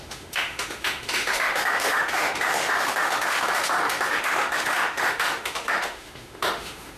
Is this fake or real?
fake